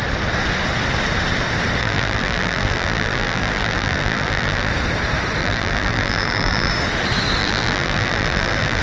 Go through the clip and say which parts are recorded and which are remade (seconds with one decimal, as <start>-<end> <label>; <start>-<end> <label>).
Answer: 0.0-1.8 recorded; 1.8-4.7 remade; 4.7-5.4 recorded; 5.4-6.7 remade; 6.7-7.4 recorded; 7.4-8.8 remade